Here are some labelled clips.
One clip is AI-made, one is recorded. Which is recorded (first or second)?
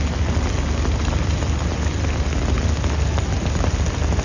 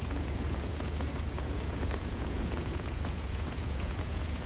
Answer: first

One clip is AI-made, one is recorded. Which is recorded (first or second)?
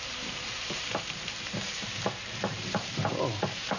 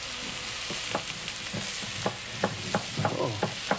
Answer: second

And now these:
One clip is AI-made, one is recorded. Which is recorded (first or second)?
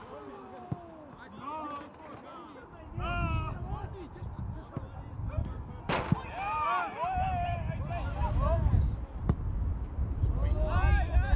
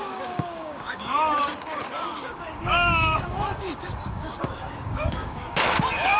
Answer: first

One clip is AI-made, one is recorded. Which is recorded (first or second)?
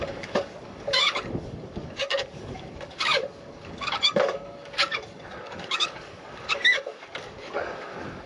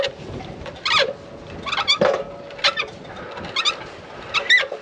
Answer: second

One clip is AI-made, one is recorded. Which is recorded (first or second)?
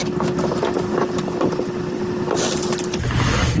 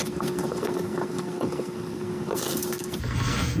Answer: first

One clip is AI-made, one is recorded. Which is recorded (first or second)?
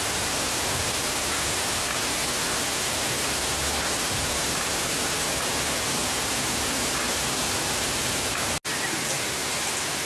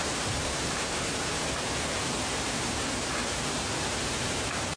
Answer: first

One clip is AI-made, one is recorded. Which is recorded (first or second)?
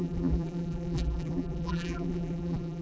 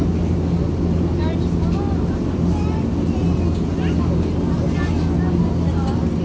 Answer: second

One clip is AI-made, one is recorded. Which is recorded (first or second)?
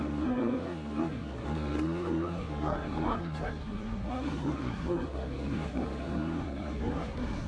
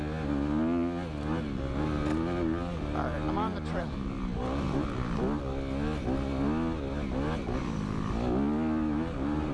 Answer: second